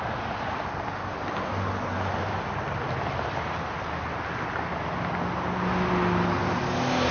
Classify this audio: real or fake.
real